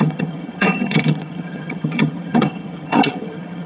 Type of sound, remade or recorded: remade